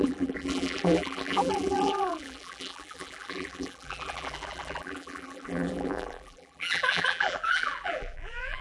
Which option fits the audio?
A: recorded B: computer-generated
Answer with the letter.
B